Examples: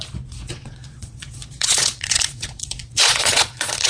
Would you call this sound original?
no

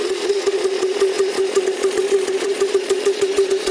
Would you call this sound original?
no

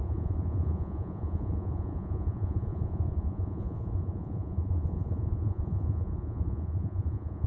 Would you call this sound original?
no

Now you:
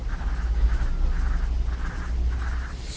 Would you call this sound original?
yes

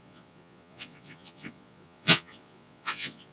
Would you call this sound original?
no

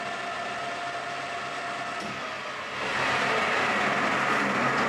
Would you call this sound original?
yes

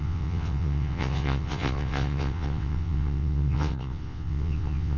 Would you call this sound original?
no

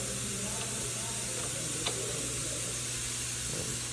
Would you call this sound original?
yes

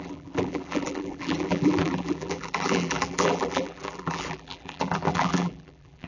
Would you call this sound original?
no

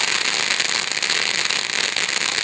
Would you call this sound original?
yes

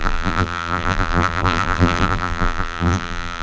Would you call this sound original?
no